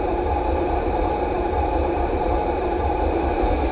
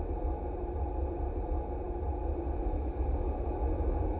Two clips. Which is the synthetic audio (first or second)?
first